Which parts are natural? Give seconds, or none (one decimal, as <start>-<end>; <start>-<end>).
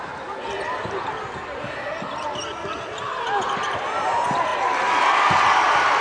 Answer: 0.0-6.0